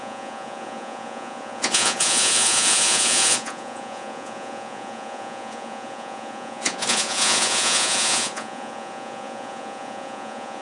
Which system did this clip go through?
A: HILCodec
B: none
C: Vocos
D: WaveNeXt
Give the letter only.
C